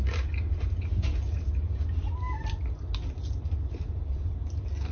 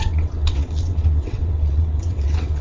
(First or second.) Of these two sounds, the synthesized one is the second